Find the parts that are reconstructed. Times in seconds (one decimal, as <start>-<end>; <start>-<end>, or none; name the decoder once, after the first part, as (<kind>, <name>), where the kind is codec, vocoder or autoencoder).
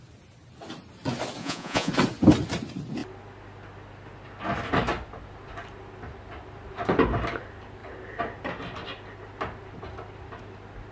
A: 1.4-1.9 (vocoder, Vocos)